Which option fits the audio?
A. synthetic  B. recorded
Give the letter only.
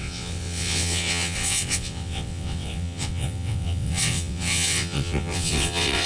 A